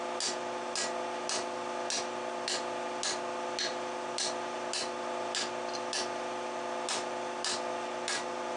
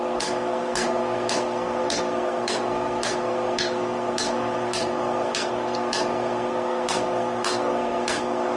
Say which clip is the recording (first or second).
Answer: first